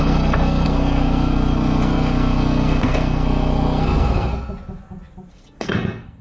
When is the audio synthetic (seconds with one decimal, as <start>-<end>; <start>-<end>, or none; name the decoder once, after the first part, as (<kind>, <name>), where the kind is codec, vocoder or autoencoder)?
0.0-4.3 (codec, SNAC); 5.3-6.2